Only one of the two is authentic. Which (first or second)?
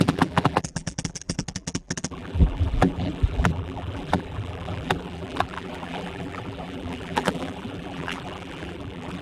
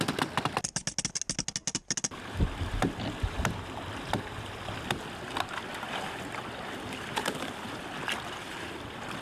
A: second